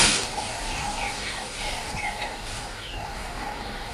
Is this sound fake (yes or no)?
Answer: yes